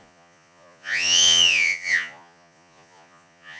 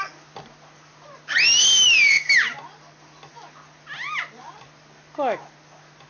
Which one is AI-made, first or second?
first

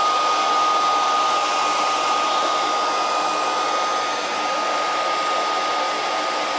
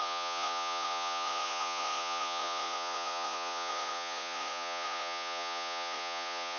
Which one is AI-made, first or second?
second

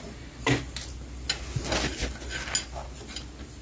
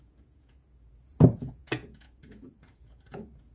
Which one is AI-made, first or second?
second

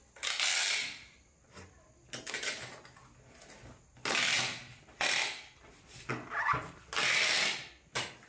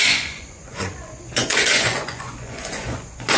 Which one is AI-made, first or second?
second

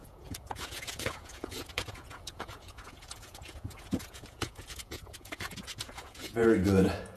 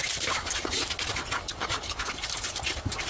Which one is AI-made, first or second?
first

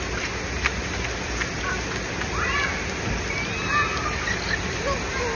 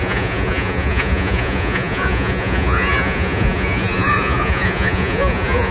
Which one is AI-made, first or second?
second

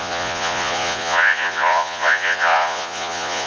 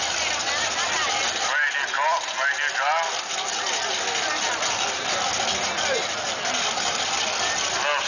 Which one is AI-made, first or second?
first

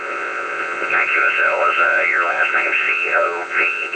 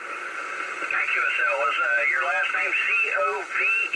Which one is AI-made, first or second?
first